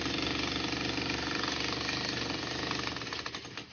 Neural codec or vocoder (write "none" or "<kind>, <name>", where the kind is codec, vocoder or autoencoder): none